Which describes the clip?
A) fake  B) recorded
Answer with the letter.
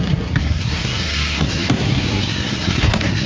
A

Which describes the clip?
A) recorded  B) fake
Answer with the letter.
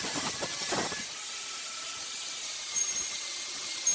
A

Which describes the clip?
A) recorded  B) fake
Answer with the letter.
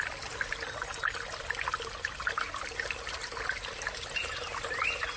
A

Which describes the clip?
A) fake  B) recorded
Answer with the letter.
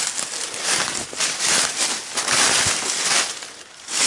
B